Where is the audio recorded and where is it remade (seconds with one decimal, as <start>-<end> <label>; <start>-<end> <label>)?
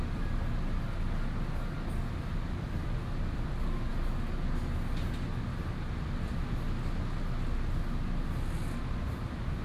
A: 0.0-9.6 recorded